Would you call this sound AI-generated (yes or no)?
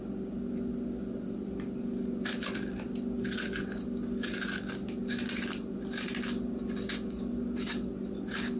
no